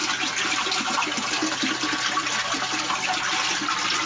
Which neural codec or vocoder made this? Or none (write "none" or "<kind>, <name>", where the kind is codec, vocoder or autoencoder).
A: none